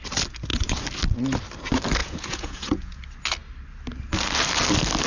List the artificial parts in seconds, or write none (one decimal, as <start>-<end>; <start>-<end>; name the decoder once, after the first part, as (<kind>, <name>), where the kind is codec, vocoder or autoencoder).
2.0-3.0 (vocoder, Vocos)